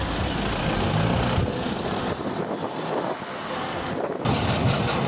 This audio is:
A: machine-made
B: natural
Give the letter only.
B